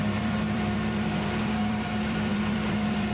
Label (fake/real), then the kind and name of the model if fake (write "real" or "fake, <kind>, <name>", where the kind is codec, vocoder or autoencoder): fake, vocoder, BigVGAN v2